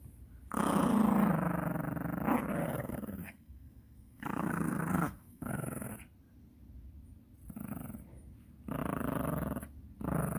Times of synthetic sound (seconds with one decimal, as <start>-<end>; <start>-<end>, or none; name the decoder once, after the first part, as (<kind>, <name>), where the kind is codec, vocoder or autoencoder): 2.6-5.9 (codec, SNAC)